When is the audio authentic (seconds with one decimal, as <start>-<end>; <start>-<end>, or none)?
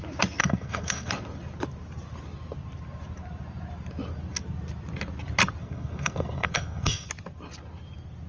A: 0.0-0.4; 1.1-5.6; 7.1-8.3